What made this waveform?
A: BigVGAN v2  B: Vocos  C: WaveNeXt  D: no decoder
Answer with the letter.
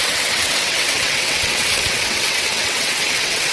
C